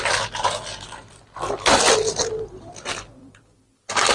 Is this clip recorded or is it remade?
recorded